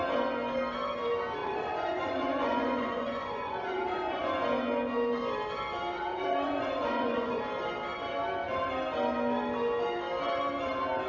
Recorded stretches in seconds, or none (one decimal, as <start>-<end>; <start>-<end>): 0.0-1.4; 4.2-6.1; 7.4-11.1